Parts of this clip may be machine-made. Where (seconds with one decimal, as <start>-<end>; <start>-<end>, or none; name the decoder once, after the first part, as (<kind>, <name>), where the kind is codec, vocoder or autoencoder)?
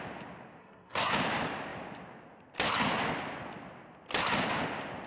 0.6-1.1 (codec, SNAC)